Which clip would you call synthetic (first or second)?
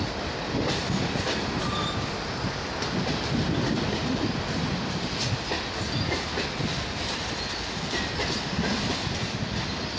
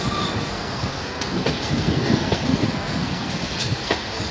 second